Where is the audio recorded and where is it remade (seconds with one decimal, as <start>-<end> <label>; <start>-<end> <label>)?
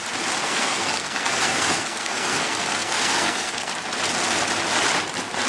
0.0-0.4 recorded; 0.4-3.7 remade; 3.7-5.5 recorded